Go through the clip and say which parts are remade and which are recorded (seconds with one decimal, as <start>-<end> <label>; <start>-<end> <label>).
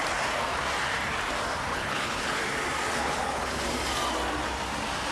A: 0.0-1.7 recorded; 1.7-2.4 remade; 2.4-3.0 recorded; 3.0-3.6 remade; 3.6-5.1 recorded